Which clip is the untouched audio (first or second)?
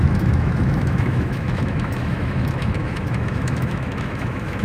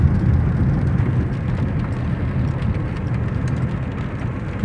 second